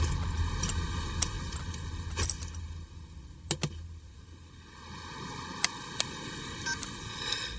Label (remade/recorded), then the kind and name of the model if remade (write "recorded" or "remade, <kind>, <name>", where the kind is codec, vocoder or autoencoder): recorded